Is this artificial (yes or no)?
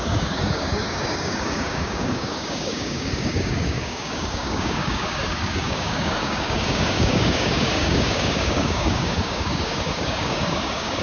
yes